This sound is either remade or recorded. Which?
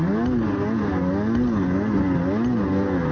recorded